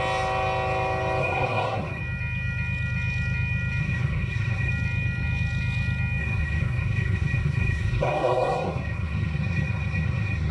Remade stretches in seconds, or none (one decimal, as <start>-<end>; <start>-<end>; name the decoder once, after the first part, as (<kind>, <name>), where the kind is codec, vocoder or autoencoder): 1.2-2.0 (codec, SNAC); 3.8-4.7; 6.2-10.5